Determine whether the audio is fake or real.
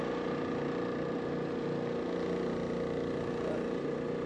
real